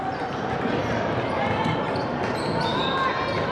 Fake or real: real